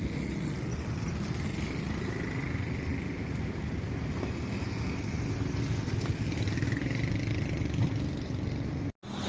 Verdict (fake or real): real